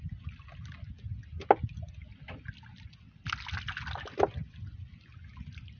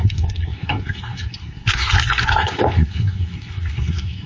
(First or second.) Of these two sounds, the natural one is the first